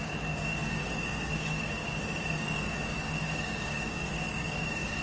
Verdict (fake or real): fake